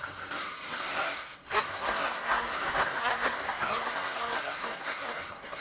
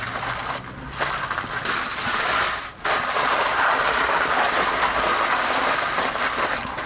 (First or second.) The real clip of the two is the second